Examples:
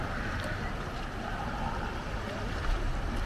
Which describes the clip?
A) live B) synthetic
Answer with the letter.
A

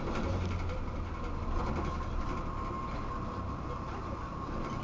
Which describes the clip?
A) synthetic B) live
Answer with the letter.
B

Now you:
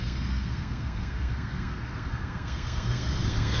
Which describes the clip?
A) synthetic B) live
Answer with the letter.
A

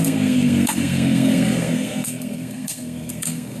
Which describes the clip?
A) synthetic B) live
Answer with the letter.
A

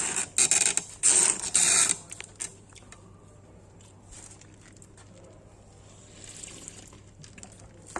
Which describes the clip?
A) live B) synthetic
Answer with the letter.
A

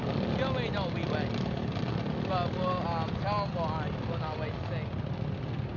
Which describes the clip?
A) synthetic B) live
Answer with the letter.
B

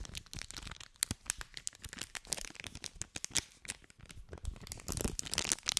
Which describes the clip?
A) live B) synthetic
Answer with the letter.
A